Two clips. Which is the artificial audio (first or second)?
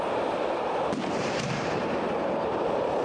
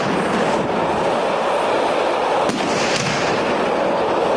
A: first